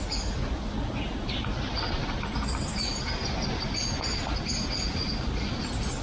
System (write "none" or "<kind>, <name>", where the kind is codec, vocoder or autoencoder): none